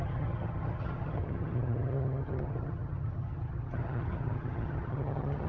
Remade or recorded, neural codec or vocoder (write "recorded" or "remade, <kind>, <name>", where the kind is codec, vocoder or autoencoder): remade, vocoder, HiFi-GAN